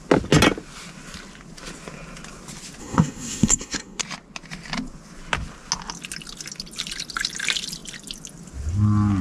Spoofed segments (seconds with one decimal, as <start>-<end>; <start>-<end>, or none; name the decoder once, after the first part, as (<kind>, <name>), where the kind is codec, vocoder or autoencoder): 2.8-4.0 (codec, SNAC)